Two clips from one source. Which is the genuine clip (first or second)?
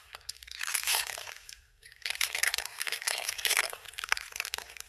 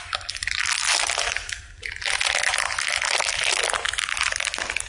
second